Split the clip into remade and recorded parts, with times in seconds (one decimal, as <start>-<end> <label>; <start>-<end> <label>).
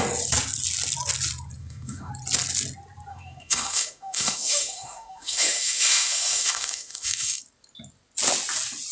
0.0-1.6 recorded; 1.6-2.1 remade; 2.1-3.1 recorded; 3.1-7.4 remade; 7.4-8.9 recorded